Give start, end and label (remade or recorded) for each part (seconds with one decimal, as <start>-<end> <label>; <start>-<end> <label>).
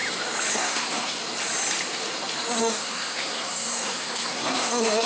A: 0.0-0.5 recorded; 0.5-1.2 remade; 1.2-2.6 recorded; 2.6-5.1 remade